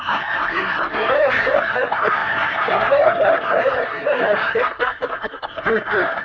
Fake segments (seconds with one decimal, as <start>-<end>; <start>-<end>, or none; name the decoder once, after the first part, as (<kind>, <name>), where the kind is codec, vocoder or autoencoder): 0.0-6.2 (codec, SNAC)